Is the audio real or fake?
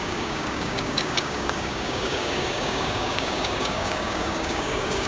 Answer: fake